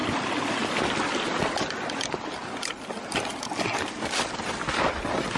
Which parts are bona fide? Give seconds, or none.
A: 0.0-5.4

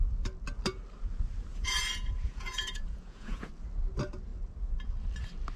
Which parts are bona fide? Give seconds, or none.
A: 0.0-1.5; 3.5-5.6